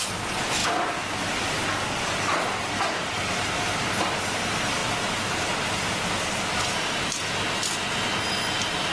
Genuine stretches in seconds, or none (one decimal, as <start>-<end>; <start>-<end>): 0.0-8.9